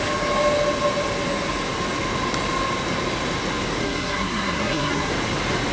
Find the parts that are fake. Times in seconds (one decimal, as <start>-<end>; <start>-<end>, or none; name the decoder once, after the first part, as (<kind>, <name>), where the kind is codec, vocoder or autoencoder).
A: 3.8-5.1 (codec, SNAC)